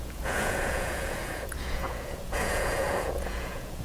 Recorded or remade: remade